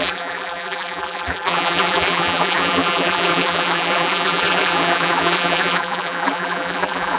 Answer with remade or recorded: remade